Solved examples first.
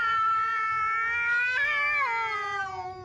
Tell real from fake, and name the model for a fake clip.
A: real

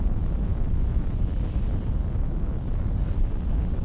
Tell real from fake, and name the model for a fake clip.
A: real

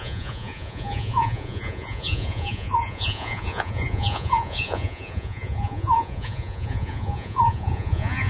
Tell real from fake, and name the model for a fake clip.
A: fake, vocoder, Vocos